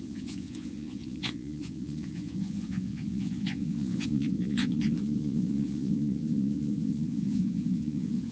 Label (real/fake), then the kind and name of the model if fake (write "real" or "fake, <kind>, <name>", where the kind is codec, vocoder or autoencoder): fake, vocoder, Vocos